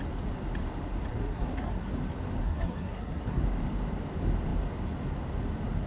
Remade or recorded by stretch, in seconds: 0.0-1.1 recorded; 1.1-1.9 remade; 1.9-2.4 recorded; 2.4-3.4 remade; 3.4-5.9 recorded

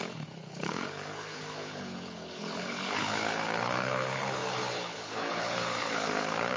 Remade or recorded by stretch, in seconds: 0.0-6.6 remade